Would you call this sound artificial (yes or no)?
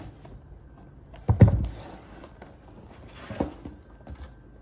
no